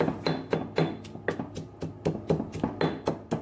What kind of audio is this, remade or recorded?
recorded